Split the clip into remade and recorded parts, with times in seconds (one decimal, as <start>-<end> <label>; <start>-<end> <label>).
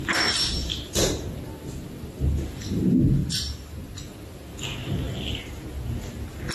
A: 0.0-0.6 recorded; 0.6-1.7 remade; 1.7-3.2 recorded; 3.2-4.0 remade; 4.0-6.5 recorded